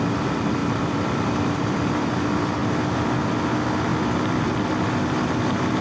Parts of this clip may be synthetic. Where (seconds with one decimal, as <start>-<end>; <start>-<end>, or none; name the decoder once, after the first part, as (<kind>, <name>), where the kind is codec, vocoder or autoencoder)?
0.6-1.9 (vocoder, BigVGAN v2); 3.9-4.5